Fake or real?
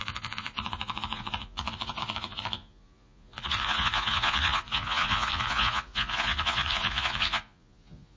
fake